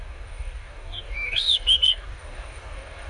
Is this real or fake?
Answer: fake